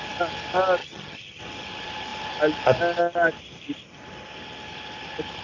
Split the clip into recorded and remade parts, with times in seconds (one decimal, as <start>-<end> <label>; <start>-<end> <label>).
0.0-0.8 recorded; 0.8-1.4 remade; 1.4-5.4 recorded